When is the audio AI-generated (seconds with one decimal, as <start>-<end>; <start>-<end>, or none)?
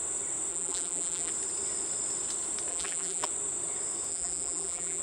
0.5-1.3; 2.7-3.3; 4.1-5.0